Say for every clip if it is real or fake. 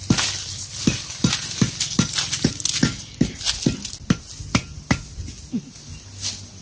real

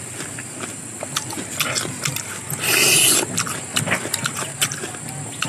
real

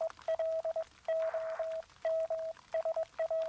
real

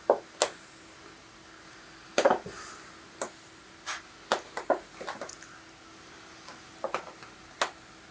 real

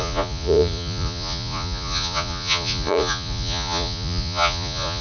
fake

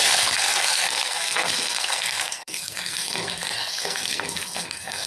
fake